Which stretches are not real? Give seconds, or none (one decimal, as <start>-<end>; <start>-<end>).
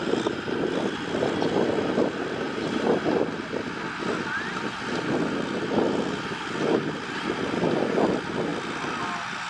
none